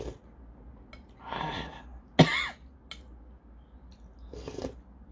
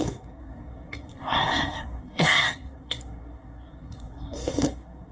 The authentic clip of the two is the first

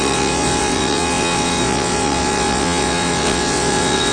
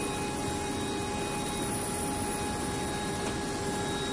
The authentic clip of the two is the second